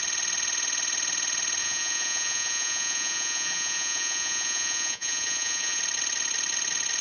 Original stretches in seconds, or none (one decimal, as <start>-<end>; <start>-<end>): 0.0-1.6; 5.8-7.0